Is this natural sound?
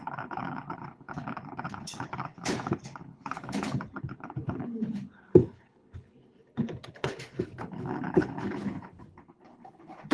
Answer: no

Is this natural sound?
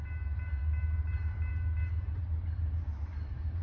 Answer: no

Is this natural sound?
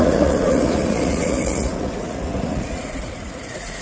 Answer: no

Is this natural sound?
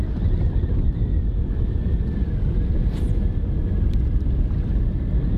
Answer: yes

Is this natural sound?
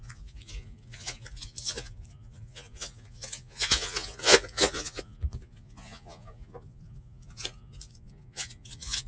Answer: no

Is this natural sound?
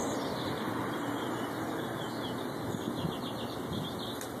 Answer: yes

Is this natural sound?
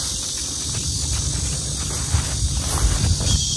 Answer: yes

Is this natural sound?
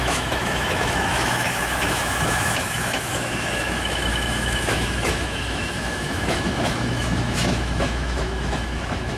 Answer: no